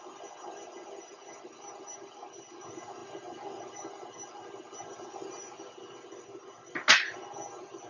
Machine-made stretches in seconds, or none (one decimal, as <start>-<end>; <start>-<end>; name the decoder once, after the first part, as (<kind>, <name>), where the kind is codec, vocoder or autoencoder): none